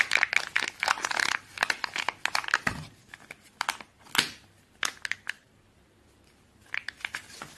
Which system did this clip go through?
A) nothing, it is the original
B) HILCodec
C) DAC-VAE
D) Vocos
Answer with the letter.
A